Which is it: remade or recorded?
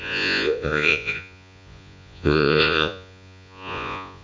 remade